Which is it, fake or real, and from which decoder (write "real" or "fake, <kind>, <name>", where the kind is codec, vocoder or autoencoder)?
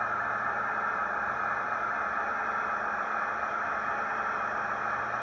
fake, vocoder, BigVGAN v2